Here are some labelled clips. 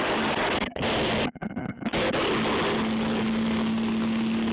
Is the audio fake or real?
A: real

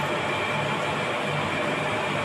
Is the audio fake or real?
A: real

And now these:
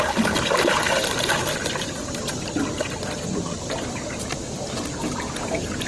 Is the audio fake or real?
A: real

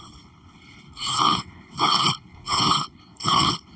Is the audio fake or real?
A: fake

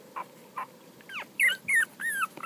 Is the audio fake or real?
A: real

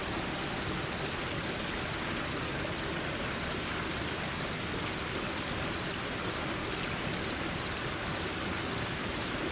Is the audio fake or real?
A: real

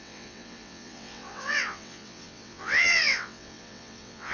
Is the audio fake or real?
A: fake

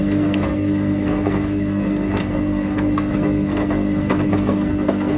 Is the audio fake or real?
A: fake